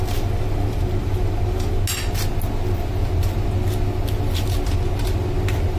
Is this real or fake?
real